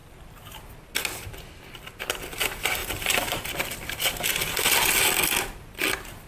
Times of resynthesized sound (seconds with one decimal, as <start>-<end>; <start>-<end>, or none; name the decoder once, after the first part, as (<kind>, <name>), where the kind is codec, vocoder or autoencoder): 2.8-3.7 (vocoder, BigVGAN v2)